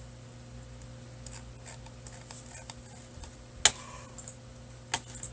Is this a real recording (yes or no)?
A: yes